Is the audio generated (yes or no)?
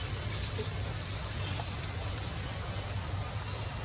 no